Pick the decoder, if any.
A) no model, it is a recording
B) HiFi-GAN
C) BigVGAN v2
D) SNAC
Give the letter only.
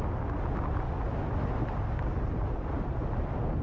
A